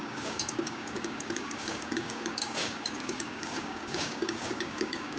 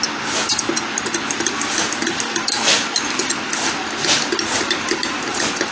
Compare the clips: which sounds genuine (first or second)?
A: second